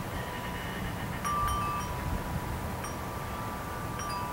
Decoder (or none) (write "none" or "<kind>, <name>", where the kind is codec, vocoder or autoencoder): none